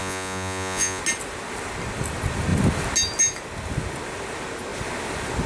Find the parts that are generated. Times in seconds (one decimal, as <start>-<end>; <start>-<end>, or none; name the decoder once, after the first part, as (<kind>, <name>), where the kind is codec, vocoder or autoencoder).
0.0-1.0 (vocoder, Vocos)